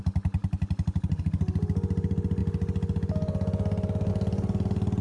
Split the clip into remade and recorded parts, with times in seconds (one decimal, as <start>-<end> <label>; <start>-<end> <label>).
0.0-5.0 recorded